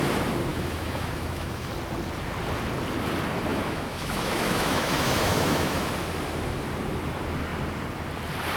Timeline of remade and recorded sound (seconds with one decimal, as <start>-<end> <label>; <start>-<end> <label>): 0.0-0.5 recorded; 0.5-1.7 remade; 1.7-3.5 recorded; 3.5-5.9 remade; 5.9-8.6 recorded